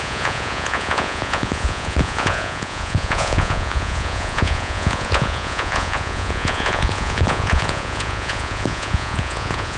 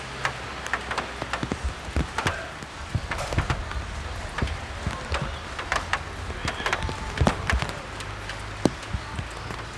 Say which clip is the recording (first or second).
second